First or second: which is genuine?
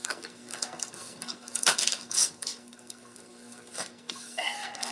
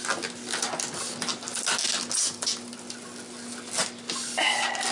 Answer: second